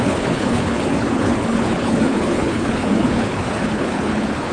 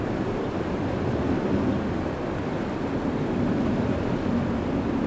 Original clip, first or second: second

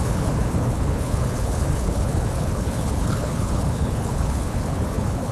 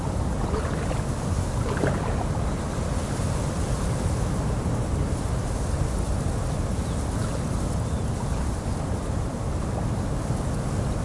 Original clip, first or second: second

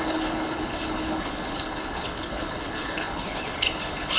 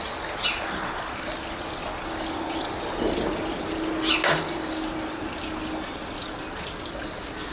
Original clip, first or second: second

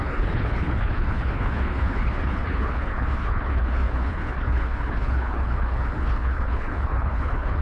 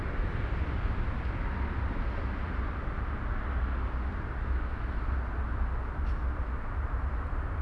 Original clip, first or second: second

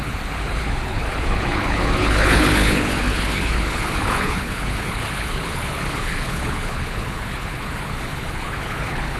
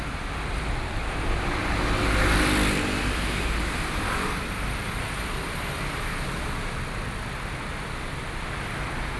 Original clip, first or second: second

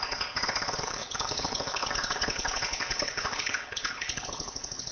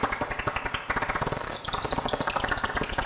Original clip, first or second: second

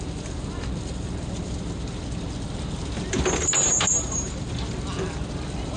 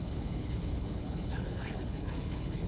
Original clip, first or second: first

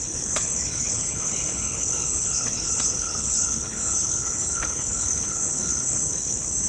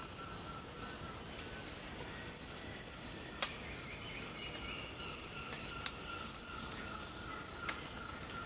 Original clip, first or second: second